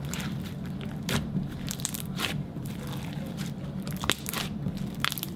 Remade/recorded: remade